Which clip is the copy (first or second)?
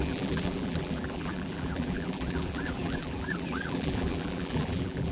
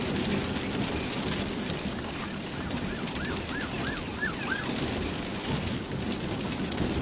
first